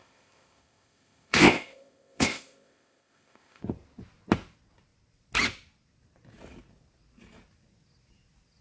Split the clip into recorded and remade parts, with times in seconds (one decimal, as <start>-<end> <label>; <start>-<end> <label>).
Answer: 0.0-3.6 remade; 3.6-8.6 recorded